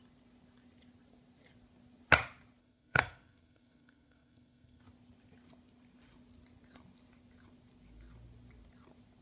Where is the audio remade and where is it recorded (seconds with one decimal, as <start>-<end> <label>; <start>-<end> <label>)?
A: 0.0-2.6 recorded; 2.6-4.8 remade; 4.8-9.2 recorded